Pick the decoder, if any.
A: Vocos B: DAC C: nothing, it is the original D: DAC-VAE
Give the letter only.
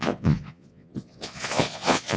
A